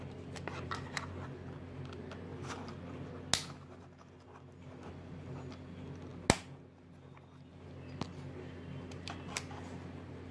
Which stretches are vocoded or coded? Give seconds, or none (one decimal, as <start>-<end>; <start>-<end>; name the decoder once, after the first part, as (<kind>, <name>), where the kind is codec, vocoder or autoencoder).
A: 0.0-2.3 (vocoder, BigVGAN v2); 4.9-6.1; 7.5-10.3